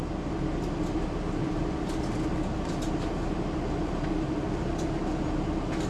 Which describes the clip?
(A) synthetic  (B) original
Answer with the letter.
B